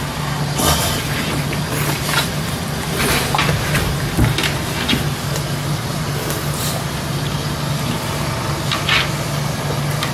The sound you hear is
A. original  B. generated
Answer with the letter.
A